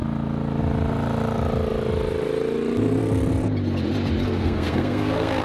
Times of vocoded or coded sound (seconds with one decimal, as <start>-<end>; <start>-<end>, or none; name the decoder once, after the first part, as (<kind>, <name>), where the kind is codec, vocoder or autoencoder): 4.4-5.4 (codec, SNAC)